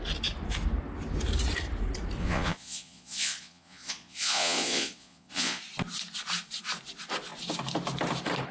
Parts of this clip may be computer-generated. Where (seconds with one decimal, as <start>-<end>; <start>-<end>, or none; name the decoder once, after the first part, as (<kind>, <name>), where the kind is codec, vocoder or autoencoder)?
2.2-5.6 (vocoder, Vocos)